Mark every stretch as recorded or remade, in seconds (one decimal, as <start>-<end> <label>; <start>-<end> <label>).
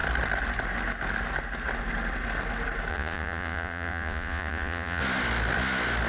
0.0-2.9 recorded; 2.9-5.0 remade; 5.0-6.1 recorded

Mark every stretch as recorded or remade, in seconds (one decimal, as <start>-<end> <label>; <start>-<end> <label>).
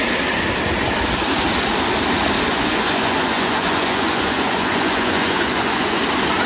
0.0-2.5 recorded; 2.5-6.0 remade; 6.0-6.5 recorded